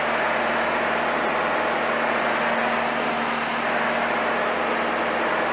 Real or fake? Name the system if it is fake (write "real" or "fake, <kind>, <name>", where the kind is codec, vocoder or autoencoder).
real